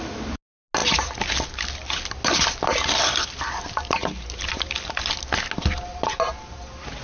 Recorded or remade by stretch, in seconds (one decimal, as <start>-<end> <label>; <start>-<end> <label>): 0.0-7.0 recorded